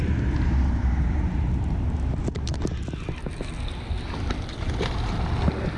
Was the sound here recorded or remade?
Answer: recorded